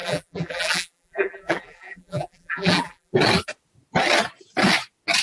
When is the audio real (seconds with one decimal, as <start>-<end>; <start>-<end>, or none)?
3.1-5.2